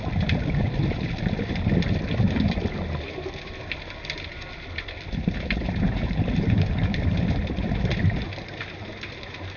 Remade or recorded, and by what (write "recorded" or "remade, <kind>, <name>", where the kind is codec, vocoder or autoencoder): recorded